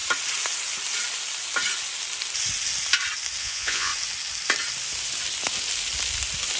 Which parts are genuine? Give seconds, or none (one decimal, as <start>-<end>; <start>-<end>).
0.0-3.4; 3.9-6.6